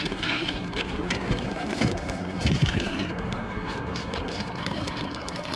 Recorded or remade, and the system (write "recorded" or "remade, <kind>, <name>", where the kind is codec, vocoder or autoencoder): remade, codec, SNAC